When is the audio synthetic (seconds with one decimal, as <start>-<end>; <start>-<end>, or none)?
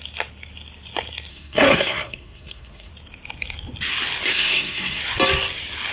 1.3-2.9; 4.3-5.0